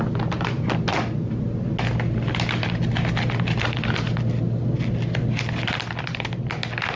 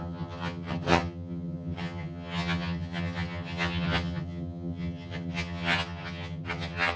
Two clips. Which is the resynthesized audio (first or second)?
second